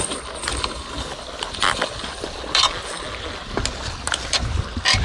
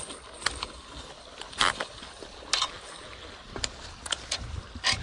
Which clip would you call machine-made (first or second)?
second